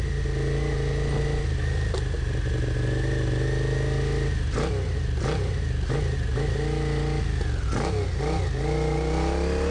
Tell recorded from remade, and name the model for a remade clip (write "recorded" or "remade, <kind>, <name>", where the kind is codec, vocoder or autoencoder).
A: recorded